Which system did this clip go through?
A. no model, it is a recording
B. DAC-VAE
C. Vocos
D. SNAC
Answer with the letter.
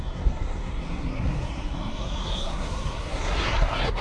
D